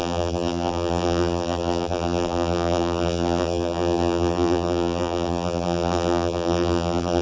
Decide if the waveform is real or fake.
fake